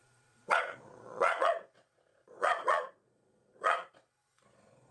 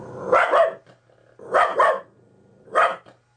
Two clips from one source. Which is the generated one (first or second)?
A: first